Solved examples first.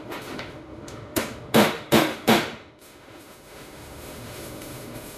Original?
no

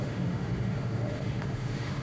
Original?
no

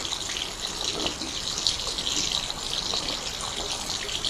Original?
yes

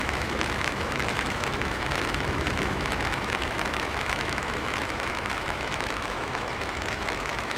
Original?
no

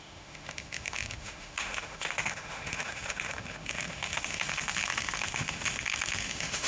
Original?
no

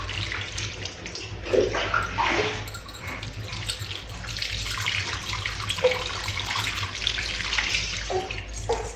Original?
yes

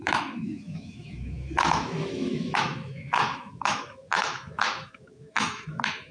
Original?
no